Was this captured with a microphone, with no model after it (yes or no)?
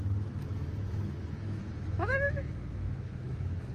no